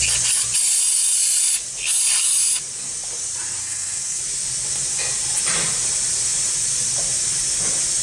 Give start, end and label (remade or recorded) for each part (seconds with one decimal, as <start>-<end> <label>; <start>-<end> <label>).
0.0-3.6 recorded; 3.6-4.2 remade; 4.2-8.0 recorded